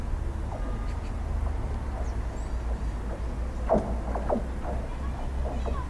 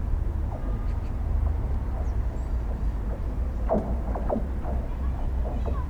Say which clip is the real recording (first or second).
first